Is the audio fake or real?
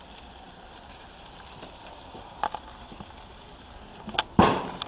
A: real